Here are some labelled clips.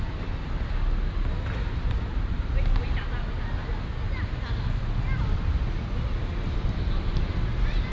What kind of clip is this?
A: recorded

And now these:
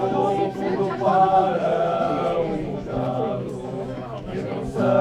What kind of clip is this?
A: remade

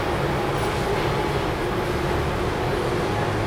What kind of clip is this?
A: recorded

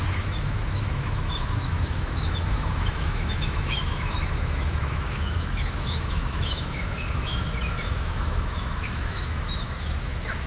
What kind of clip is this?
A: remade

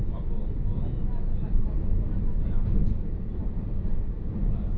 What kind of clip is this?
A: recorded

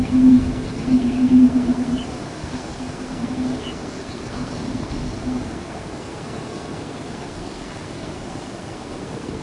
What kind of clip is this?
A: remade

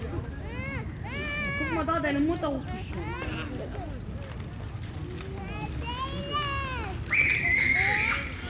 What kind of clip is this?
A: recorded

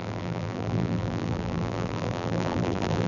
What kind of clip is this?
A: remade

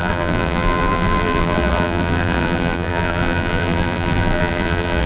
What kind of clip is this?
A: remade